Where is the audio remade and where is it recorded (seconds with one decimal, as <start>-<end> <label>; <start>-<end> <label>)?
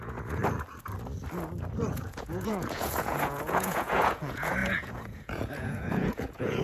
0.0-0.4 remade; 0.4-1.9 recorded; 1.9-6.6 remade